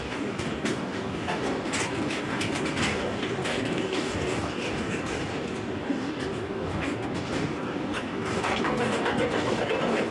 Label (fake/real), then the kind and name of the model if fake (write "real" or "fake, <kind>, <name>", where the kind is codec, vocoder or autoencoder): fake, codec, DAC